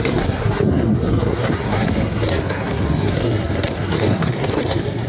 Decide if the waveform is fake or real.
fake